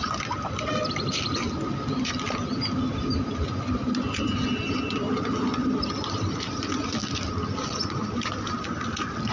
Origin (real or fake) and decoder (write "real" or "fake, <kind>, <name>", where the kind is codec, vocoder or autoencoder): real